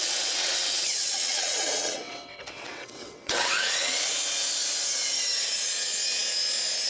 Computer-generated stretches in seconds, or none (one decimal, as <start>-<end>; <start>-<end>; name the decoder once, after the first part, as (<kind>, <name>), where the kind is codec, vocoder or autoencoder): 0.0-4.1 (vocoder, WaveNeXt)